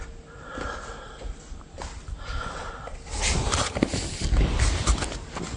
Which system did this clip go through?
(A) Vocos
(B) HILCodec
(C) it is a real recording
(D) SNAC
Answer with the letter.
C